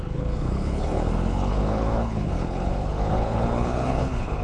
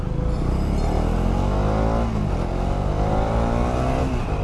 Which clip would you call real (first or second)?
second